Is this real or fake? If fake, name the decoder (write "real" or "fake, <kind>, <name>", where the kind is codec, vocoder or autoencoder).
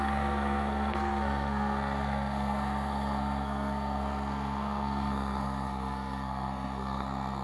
fake, codec, SNAC